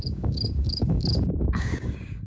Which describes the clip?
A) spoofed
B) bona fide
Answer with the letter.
A